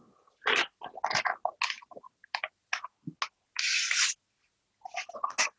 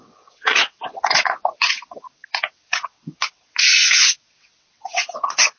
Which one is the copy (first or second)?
second